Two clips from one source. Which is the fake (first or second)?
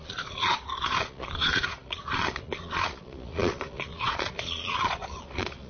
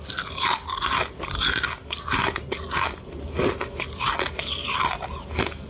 first